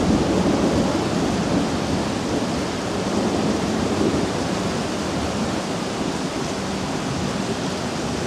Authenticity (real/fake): real